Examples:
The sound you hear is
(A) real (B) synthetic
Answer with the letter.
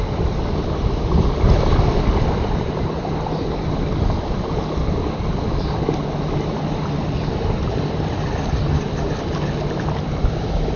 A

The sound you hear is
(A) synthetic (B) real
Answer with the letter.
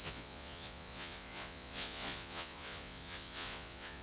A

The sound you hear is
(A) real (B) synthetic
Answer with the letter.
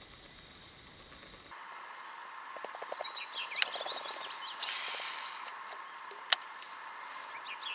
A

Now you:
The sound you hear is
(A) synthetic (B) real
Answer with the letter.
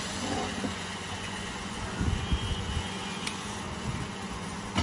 A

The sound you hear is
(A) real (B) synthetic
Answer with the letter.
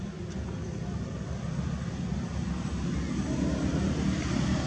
A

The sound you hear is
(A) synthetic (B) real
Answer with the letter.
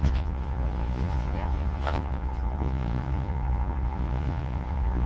A